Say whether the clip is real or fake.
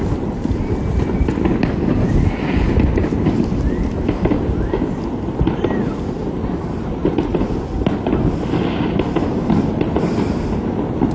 real